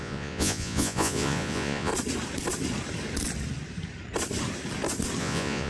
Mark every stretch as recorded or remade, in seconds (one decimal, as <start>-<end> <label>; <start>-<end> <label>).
0.0-1.9 remade; 1.9-5.2 recorded; 5.2-5.7 remade